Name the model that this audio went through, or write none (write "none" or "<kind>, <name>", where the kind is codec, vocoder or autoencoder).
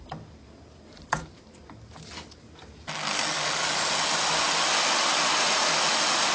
none